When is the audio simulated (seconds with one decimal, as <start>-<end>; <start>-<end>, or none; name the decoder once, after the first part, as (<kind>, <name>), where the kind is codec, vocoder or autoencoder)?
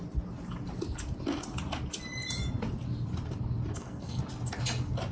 3.7-4.2 (codec, SNAC)